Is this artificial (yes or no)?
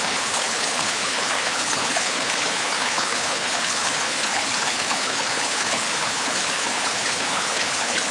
yes